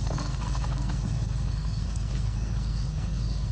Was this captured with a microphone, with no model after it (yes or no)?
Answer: no